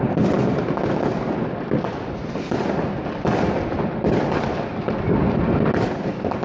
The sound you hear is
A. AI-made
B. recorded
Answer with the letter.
B